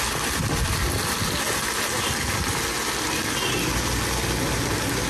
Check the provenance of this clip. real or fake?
real